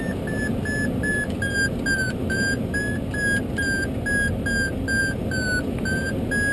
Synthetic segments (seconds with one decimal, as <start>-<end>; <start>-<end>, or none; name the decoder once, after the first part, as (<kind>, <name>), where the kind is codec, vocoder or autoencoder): none